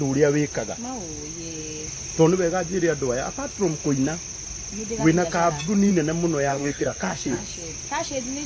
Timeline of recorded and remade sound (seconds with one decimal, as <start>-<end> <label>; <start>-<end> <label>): 0.0-6.5 recorded; 6.5-7.5 remade; 7.5-8.5 recorded

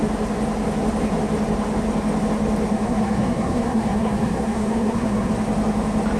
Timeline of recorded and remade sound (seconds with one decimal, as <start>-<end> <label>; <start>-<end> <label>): 0.0-2.7 recorded; 2.7-5.3 remade; 5.3-6.2 recorded

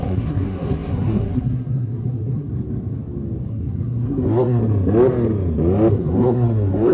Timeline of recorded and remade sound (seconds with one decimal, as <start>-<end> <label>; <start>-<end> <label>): 0.0-2.5 remade; 2.5-3.5 recorded; 3.5-4.6 remade; 4.6-5.9 recorded; 5.9-6.9 remade

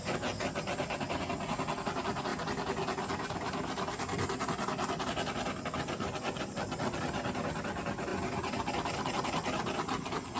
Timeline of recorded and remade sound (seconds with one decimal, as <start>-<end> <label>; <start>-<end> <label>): 0.0-10.4 recorded

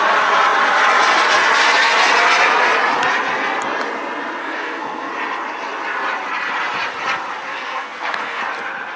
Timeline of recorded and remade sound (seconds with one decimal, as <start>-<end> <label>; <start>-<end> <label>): 0.0-4.4 recorded; 4.4-5.1 remade; 5.1-7.5 recorded; 7.5-8.4 remade; 8.4-9.0 recorded

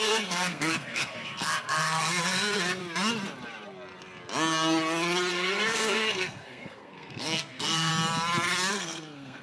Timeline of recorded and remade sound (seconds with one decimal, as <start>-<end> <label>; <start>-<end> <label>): 0.0-2.8 remade; 2.8-5.3 recorded; 5.3-7.9 remade; 7.9-8.7 recorded; 8.7-9.4 remade